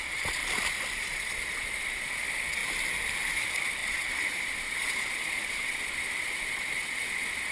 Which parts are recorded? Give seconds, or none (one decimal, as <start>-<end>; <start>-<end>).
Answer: 0.4-1.0; 2.6-3.4